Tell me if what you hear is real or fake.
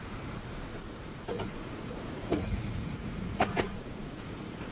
fake